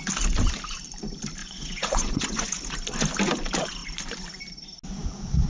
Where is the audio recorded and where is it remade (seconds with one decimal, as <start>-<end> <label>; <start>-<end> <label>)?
0.0-1.4 recorded; 1.4-2.6 remade; 2.6-5.5 recorded